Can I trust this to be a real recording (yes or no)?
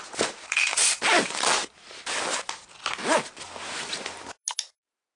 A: yes